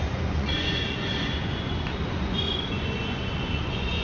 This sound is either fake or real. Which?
fake